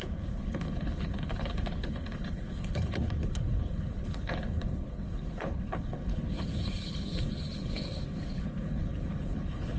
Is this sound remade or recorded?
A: remade